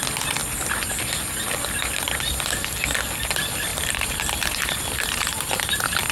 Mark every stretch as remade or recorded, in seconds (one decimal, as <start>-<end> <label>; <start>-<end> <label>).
0.0-3.7 recorded; 3.7-5.5 remade; 5.5-6.1 recorded